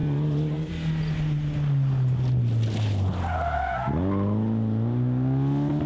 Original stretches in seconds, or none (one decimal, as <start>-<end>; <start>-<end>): 0.0-5.9